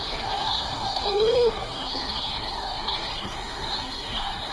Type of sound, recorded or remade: remade